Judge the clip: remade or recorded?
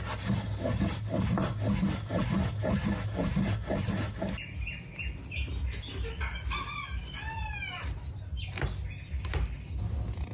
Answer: recorded